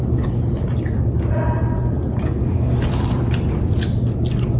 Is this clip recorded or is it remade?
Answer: recorded